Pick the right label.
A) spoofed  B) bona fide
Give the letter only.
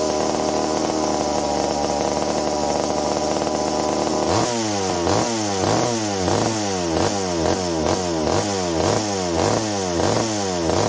B